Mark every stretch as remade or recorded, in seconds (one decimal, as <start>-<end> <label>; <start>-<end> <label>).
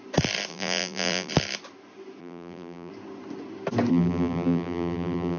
0.0-0.5 recorded; 0.5-1.3 remade; 1.3-2.2 recorded; 2.2-2.9 remade; 2.9-3.9 recorded; 3.9-5.4 remade